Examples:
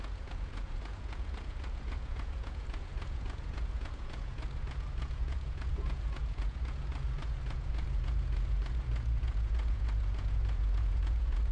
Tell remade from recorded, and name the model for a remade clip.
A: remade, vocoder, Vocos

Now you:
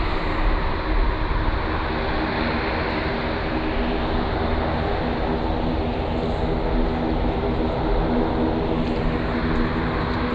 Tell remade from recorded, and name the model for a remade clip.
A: recorded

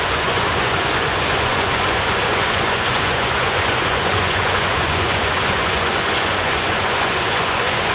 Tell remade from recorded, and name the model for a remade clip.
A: remade, vocoder, Vocos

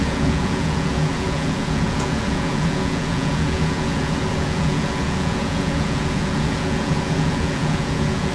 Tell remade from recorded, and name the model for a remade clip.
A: remade, vocoder, Vocos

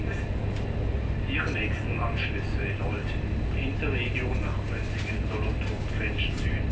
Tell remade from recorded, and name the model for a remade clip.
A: recorded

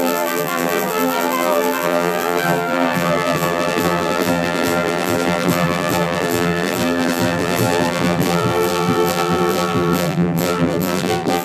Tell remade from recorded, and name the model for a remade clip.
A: remade, vocoder, BigVGAN v2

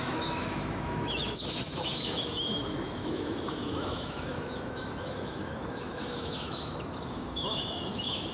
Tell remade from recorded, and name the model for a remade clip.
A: remade, autoencoder, DAC-VAE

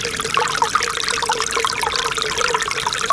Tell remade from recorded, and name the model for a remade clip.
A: recorded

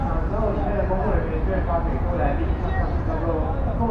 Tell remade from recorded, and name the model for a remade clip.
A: recorded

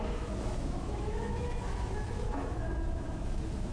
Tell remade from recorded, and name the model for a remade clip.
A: remade, autoencoder, DAC-VAE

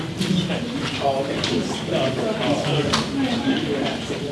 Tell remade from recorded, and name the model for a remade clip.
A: recorded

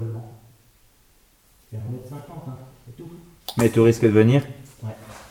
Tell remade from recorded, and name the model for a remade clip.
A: remade, vocoder, BigVGAN v2